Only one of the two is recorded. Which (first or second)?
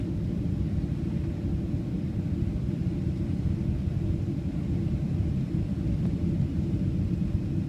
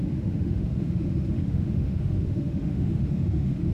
first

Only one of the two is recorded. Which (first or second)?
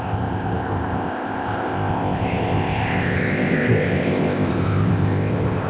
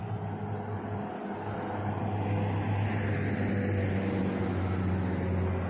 second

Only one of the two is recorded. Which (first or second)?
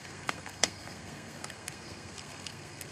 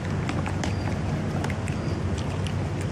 second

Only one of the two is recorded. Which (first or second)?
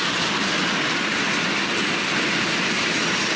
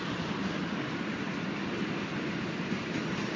first